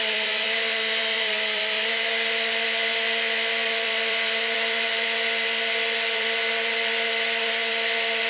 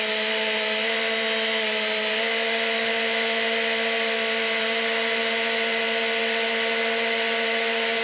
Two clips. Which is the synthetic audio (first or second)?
first